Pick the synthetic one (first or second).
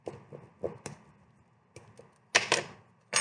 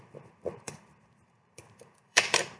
second